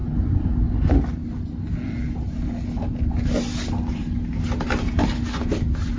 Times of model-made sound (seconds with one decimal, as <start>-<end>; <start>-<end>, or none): none